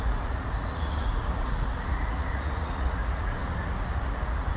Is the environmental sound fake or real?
fake